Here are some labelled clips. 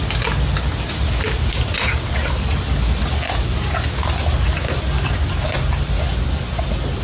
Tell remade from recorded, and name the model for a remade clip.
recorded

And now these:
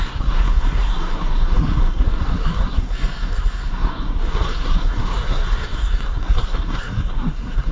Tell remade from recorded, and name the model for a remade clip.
remade, codec, SNAC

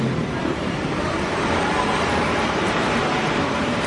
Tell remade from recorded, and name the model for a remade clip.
remade, vocoder, BigVGAN v2